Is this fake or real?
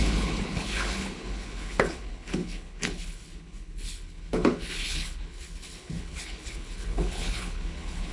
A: fake